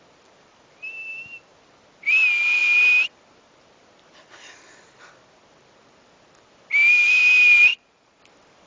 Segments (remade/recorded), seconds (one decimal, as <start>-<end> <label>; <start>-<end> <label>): 0.0-7.7 recorded; 7.7-8.2 remade; 8.2-8.7 recorded